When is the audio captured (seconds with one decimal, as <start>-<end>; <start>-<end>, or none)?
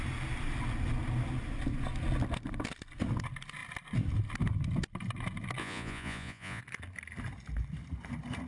0.0-5.6; 6.6-8.5